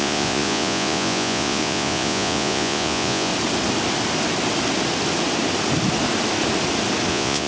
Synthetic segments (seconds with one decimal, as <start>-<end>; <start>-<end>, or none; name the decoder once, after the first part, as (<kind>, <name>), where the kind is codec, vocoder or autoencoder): 0.0-3.3 (vocoder, Vocos); 7.1-7.5